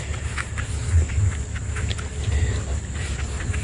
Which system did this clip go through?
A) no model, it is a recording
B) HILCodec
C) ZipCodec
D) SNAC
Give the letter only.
A